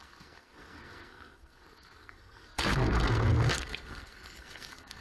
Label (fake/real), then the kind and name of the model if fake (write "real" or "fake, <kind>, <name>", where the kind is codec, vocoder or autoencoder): fake, codec, SNAC